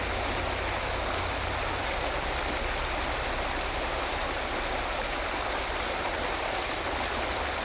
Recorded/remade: recorded